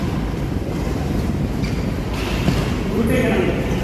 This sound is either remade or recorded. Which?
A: recorded